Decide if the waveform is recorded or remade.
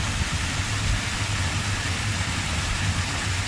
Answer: recorded